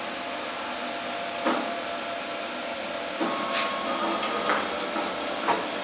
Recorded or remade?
recorded